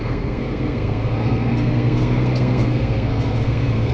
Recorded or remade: remade